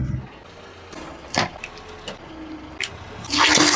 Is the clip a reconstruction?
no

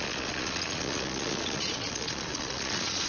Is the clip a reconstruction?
yes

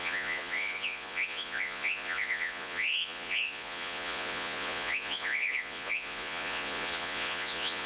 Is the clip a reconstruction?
yes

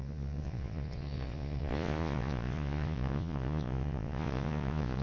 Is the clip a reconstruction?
yes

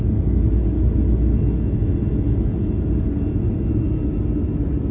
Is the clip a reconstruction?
no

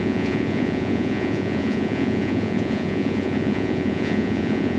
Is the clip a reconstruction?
yes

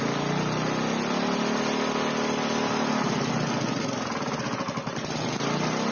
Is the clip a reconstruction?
no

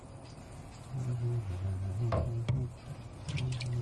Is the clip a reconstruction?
no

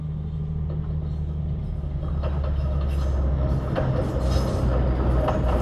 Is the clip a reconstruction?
no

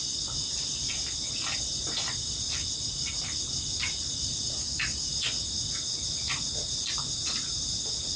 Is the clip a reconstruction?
no